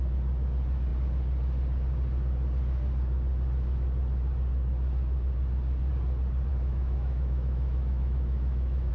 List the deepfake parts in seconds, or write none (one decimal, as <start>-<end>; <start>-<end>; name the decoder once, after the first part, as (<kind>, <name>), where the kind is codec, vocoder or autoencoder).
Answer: 6.5-8.9 (autoencoder, DAC-VAE)